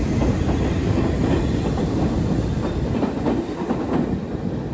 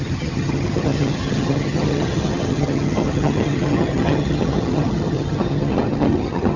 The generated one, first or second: second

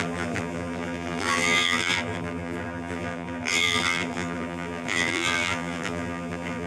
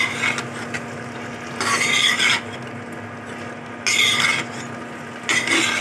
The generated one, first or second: first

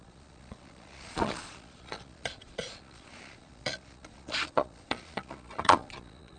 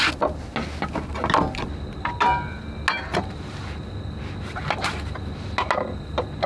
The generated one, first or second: first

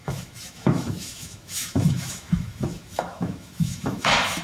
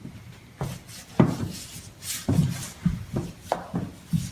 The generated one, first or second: first